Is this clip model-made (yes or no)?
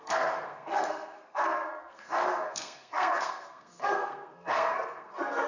yes